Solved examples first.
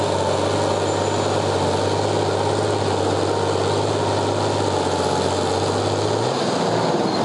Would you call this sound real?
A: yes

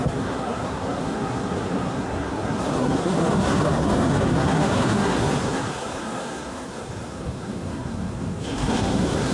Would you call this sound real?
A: no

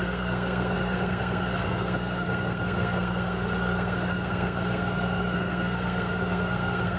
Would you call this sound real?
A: no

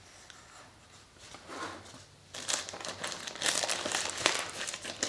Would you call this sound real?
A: yes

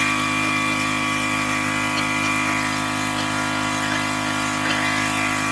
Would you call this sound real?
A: yes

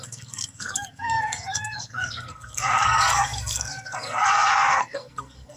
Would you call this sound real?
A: no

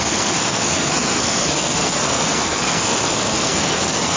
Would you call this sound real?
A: no